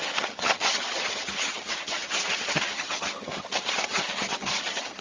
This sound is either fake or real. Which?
fake